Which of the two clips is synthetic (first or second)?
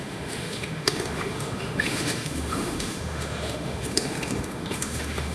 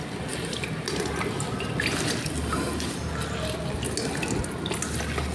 first